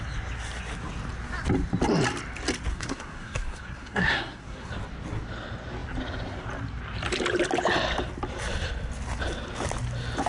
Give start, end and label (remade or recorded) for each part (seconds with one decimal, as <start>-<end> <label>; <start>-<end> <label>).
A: 0.0-2.7 recorded; 2.7-4.7 remade; 4.7-10.3 recorded